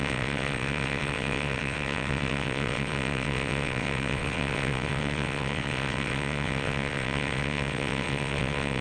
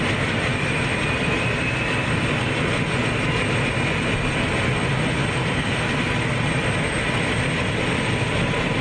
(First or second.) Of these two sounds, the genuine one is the second